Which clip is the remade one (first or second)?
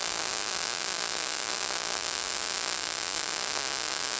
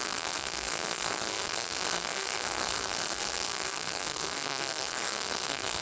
second